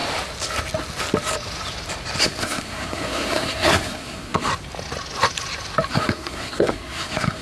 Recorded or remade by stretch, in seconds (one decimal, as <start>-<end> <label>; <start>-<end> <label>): 0.0-2.2 recorded; 2.2-4.5 remade; 4.5-5.9 recorded; 5.9-7.4 remade